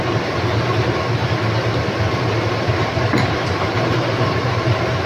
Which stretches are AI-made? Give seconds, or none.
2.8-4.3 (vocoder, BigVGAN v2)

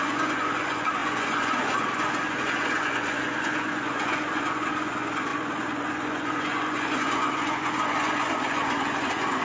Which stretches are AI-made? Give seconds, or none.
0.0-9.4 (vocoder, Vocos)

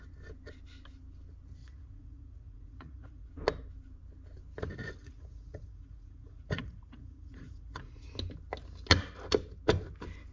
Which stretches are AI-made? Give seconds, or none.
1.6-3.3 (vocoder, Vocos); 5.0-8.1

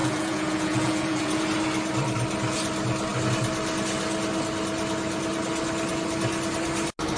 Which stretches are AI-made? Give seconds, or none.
0.0-1.4 (vocoder, Vocos)